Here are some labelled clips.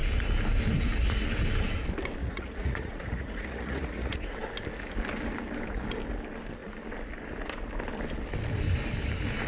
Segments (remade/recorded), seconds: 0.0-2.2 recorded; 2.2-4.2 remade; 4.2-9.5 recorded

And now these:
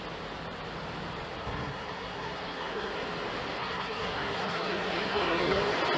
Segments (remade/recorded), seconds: 0.0-1.4 recorded; 1.4-2.9 remade; 2.9-3.6 recorded; 3.6-5.6 remade; 5.6-6.0 recorded

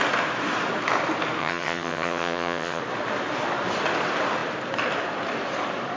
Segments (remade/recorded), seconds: 0.0-1.4 recorded; 1.4-2.8 remade; 2.8-6.0 recorded

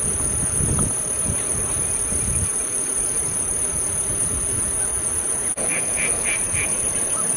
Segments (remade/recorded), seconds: 0.0-2.5 recorded; 2.5-6.9 remade; 6.9-7.4 recorded

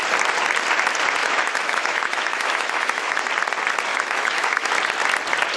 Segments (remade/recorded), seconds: 0.0-1.2 recorded; 1.2-3.3 remade; 3.3-3.9 recorded; 3.9-4.7 remade; 4.7-5.6 recorded